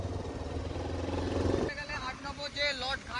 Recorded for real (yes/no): yes